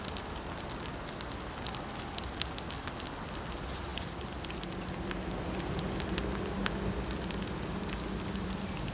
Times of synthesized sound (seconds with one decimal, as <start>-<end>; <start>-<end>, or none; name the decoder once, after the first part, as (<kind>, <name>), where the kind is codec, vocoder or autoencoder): none